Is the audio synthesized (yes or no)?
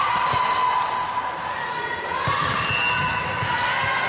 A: no